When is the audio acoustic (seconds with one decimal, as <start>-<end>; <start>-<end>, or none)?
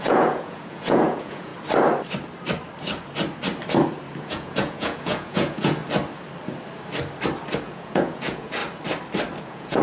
1.5-4.2; 5.8-7.6; 8.6-9.4